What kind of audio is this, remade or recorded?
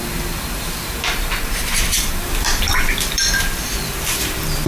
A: remade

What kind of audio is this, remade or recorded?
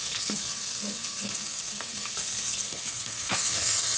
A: remade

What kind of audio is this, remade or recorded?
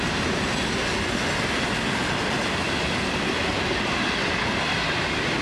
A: recorded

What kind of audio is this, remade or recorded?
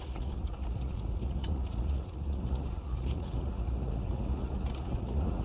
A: remade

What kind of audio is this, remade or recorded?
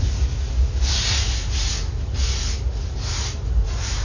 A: recorded